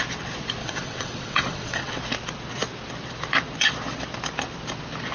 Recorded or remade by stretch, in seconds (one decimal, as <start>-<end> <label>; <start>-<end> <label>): 0.0-0.6 recorded; 0.6-2.0 remade; 2.0-5.1 recorded